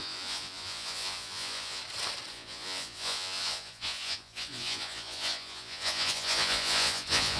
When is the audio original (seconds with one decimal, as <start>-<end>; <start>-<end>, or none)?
1.8-2.3